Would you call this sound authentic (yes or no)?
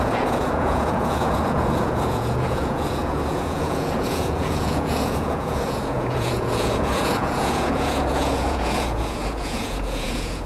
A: no